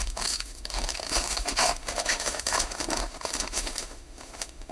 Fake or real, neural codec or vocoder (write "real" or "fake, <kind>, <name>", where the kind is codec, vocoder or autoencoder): fake, autoencoder, DAC-VAE